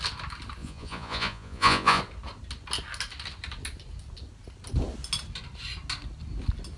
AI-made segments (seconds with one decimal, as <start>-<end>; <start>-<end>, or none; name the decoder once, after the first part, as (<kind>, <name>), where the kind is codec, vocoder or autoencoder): 0.6-2.0 (vocoder, Vocos)